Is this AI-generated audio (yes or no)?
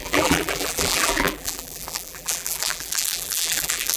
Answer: yes